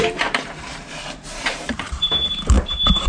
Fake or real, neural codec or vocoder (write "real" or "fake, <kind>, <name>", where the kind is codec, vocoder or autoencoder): fake, vocoder, BigVGAN v2